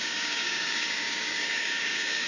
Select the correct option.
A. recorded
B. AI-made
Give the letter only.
B